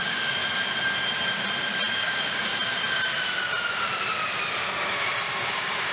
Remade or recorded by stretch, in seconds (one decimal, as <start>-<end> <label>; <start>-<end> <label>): 0.0-0.4 remade; 0.4-1.9 recorded; 1.9-2.5 remade; 2.5-5.5 recorded; 5.5-5.9 remade